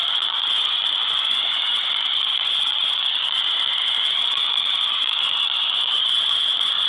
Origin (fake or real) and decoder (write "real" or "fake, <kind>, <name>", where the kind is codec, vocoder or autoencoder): fake, vocoder, Vocos